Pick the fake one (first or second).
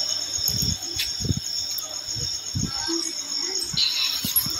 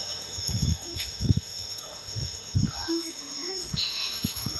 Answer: second